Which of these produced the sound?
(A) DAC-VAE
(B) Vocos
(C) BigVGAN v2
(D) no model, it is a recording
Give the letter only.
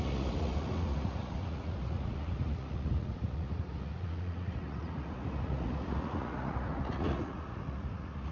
B